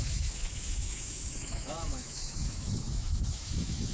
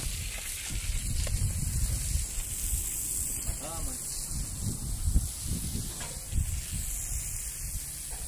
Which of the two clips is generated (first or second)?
first